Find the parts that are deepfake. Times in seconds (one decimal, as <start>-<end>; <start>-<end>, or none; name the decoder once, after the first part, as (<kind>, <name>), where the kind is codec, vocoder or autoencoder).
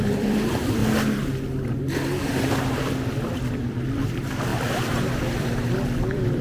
0.0-0.8 (vocoder, BigVGAN v2); 2.5-6.4